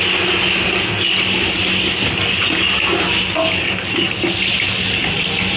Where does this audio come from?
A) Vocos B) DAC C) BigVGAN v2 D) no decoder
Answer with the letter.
D